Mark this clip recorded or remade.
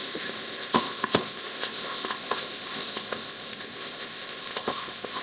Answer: remade